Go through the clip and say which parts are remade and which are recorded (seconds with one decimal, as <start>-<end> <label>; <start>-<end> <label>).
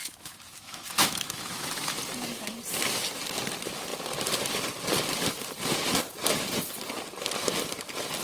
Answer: 0.0-2.0 remade; 2.0-8.2 recorded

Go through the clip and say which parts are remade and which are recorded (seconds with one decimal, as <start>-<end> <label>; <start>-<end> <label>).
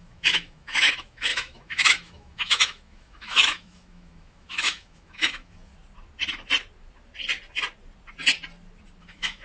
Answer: 0.0-5.7 remade; 5.7-9.0 recorded; 9.0-9.4 remade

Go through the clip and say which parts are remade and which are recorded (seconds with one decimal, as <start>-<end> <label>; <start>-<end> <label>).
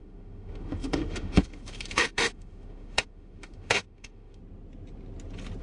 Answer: 0.0-4.4 remade; 4.4-5.6 recorded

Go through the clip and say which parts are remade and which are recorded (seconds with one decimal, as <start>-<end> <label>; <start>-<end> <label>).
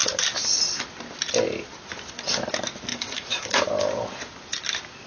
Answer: 0.0-2.9 recorded; 2.9-3.6 remade; 3.6-5.1 recorded